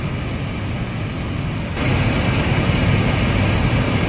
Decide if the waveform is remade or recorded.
recorded